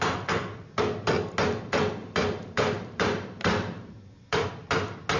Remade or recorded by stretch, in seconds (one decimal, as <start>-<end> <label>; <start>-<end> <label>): 0.0-2.0 recorded; 2.0-4.5 remade; 4.5-5.2 recorded